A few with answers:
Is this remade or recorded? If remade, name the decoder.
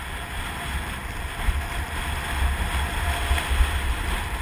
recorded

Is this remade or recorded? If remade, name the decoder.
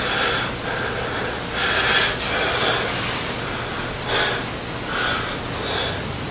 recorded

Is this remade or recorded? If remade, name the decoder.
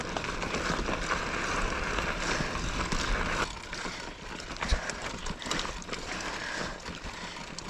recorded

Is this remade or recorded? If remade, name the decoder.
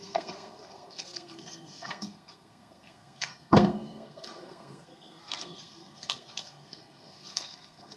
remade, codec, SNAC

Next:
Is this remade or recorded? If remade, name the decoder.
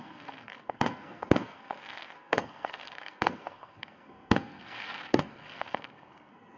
remade, codec, SNAC